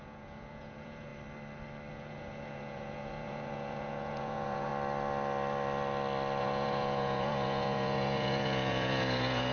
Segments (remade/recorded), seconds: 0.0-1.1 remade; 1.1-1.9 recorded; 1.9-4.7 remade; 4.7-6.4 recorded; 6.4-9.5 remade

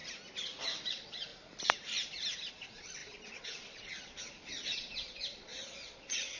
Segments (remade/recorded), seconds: 0.0-0.9 recorded; 0.9-1.3 remade; 1.3-2.5 recorded; 2.5-6.4 remade

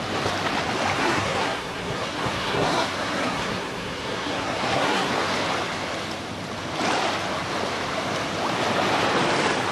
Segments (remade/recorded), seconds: 0.0-1.0 recorded; 1.0-5.1 remade; 5.1-9.7 recorded

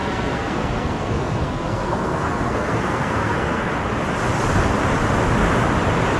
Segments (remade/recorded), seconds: 0.0-3.7 remade; 3.7-6.2 recorded

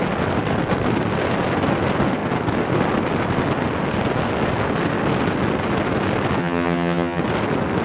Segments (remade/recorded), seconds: 0.0-6.4 recorded; 6.4-7.2 remade; 7.2-7.8 recorded

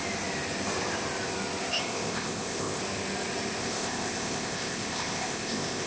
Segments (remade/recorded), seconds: 0.0-1.7 recorded; 1.7-2.8 remade; 2.8-3.6 recorded; 3.6-5.9 remade

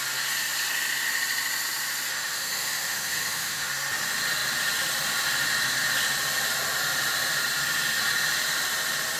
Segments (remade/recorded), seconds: 0.0-2.1 recorded; 2.1-3.7 remade; 3.7-9.2 recorded